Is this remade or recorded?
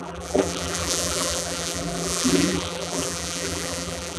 remade